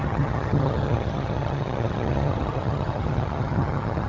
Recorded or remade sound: remade